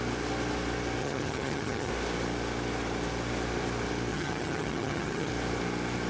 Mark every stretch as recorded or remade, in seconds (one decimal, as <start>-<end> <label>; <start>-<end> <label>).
0.0-1.0 recorded; 1.0-1.9 remade; 1.9-4.1 recorded; 4.1-5.3 remade; 5.3-6.1 recorded